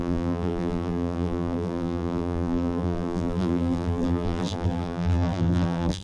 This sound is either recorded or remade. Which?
remade